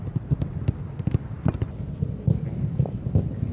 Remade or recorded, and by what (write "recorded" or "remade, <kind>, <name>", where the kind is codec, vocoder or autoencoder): recorded